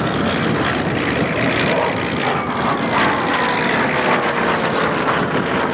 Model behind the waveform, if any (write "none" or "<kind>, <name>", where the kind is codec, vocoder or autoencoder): none